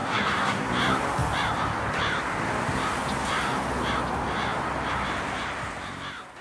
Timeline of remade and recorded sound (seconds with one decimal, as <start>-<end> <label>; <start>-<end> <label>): 0.0-0.7 remade; 0.7-6.4 recorded